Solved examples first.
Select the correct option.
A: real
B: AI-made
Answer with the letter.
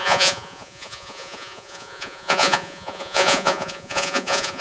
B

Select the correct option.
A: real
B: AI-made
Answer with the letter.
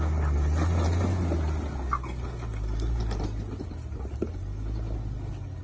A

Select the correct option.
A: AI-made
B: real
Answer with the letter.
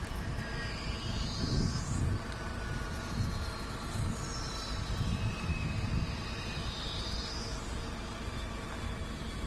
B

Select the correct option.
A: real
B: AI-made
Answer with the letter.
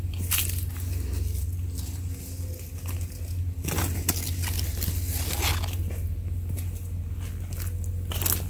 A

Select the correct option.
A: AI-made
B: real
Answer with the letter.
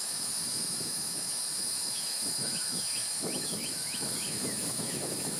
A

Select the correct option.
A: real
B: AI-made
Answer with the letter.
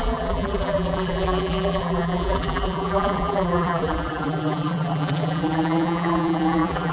B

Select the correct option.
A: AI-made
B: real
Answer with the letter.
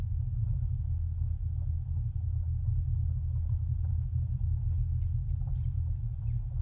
B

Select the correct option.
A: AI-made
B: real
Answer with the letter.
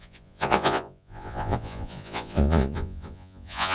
A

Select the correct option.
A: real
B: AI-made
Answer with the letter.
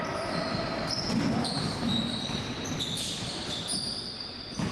A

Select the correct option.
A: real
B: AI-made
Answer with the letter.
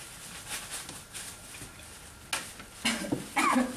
A